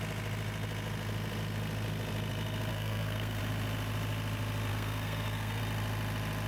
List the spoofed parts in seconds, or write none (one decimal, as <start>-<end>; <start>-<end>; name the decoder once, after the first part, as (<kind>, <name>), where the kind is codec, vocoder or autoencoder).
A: 2.7-3.4 (codec, SNAC); 4.7-5.6